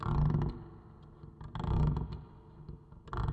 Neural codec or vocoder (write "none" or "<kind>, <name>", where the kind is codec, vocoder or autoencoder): none